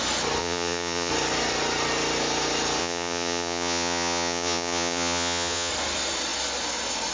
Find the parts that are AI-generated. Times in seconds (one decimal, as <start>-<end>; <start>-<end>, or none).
0.4-1.1; 2.8-5.7